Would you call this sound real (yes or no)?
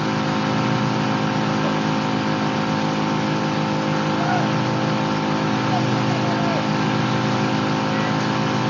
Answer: yes